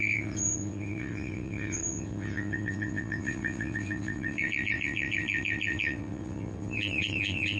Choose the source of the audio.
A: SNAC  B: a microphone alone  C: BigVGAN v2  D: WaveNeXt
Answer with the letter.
D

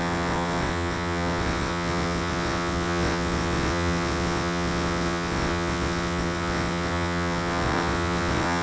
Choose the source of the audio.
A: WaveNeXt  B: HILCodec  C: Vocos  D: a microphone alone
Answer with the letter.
A